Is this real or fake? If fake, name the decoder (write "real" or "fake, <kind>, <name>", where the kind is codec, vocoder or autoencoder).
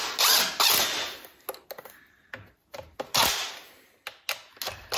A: real